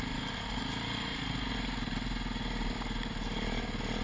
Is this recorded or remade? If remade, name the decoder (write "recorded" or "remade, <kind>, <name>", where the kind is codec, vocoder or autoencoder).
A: recorded